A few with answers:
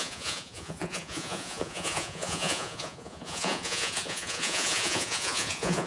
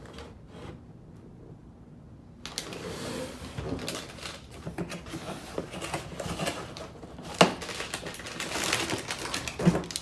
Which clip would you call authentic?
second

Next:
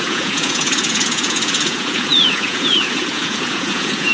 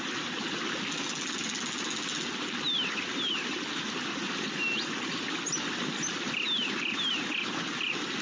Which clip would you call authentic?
second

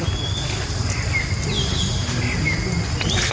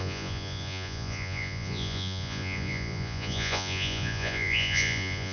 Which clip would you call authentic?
first